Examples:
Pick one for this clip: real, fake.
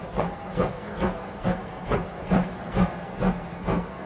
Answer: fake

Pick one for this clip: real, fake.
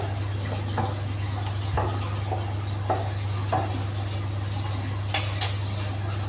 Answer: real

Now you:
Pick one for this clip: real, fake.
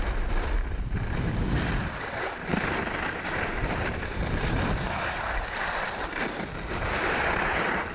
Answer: fake